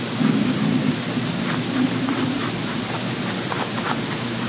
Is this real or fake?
real